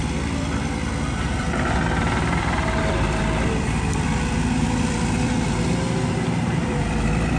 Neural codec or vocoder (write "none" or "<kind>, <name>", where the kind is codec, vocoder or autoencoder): vocoder, BigVGAN v2